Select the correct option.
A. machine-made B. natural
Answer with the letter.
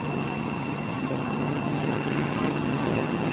A